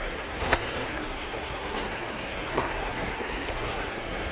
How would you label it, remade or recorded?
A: remade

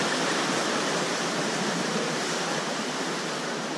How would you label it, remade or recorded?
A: remade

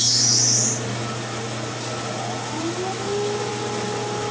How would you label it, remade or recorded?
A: recorded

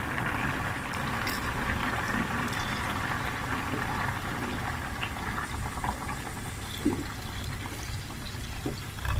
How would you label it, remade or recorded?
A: recorded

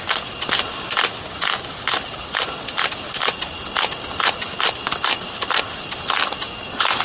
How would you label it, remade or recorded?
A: recorded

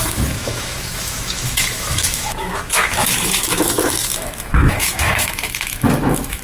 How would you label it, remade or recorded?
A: remade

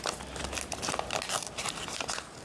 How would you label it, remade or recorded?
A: recorded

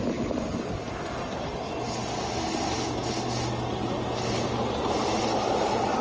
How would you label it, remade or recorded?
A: recorded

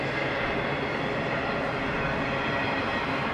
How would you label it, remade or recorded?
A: recorded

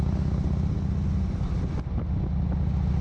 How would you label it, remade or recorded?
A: recorded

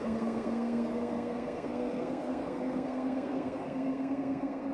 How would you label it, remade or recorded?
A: remade